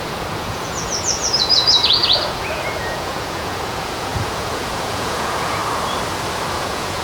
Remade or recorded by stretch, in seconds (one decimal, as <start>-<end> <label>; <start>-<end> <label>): 0.0-5.6 remade; 5.6-6.5 recorded; 6.5-7.0 remade

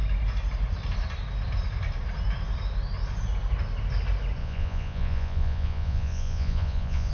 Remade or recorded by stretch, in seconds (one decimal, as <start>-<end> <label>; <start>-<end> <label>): 0.0-4.4 recorded; 4.4-7.1 remade

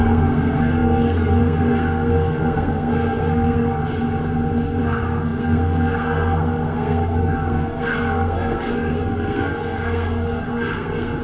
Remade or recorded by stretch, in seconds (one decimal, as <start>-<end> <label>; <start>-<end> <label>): 0.0-3.8 remade; 3.8-4.8 recorded; 4.8-11.2 remade